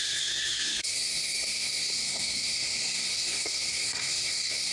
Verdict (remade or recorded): remade